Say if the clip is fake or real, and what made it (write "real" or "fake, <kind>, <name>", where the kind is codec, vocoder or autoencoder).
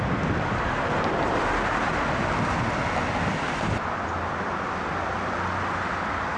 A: real